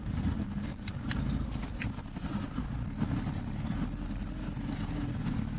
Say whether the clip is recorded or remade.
recorded